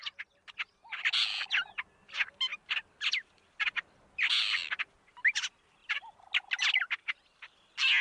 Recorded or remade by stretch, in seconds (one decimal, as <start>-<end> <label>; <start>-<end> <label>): 0.0-0.9 recorded; 0.9-1.5 remade; 1.5-2.5 recorded; 2.5-5.0 remade; 5.0-5.8 recorded; 5.8-6.3 remade; 6.3-7.0 recorded; 7.0-7.6 remade; 7.6-8.0 recorded